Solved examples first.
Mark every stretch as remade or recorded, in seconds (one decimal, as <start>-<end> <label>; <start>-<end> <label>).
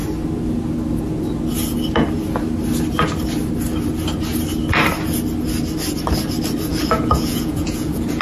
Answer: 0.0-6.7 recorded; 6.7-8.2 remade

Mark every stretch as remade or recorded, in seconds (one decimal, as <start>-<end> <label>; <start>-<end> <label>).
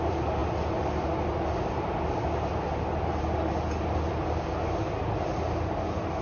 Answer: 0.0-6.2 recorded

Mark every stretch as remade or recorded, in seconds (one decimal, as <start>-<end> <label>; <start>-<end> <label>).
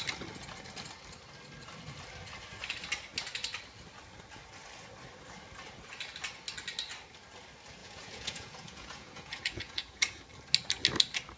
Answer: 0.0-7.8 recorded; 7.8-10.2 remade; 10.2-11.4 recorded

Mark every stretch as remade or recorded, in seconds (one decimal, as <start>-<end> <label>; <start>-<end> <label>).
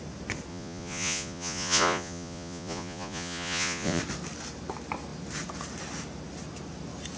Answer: 0.0-0.5 recorded; 0.5-4.0 remade; 4.0-7.2 recorded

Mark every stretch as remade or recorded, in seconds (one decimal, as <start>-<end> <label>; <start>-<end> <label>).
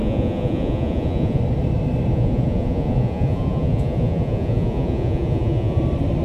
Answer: 0.0-1.4 remade; 1.4-2.1 recorded; 2.1-5.8 remade; 5.8-6.2 recorded